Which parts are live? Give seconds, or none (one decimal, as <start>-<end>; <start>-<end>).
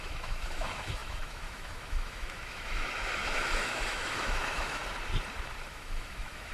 4.8-5.7